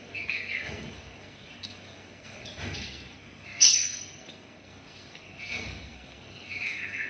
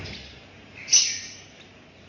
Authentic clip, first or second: second